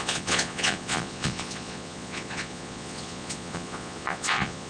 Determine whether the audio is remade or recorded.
remade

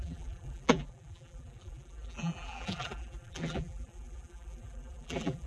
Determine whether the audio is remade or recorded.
remade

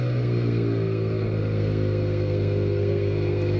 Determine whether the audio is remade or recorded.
remade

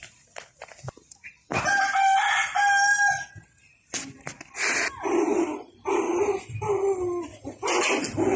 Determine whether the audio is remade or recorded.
recorded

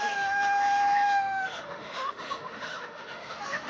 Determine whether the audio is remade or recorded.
remade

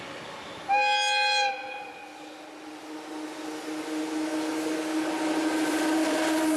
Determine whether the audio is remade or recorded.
recorded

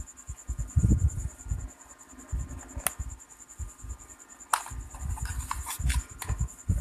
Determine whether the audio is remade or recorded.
recorded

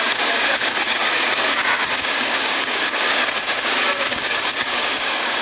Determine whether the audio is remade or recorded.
remade